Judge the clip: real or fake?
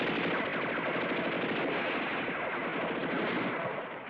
real